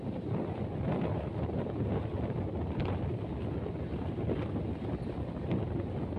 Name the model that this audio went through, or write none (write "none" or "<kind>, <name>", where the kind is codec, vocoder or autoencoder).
none